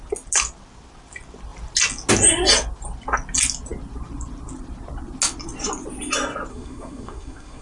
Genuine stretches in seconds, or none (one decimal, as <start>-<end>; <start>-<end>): 0.0-6.5